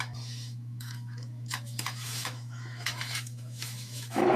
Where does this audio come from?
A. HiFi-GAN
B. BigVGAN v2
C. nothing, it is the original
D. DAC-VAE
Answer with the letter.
D